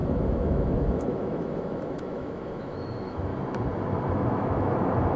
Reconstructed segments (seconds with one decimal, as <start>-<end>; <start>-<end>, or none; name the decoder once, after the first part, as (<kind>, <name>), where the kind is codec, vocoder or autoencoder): 0.0-3.3 (autoencoder, DAC-VAE); 4.1-5.2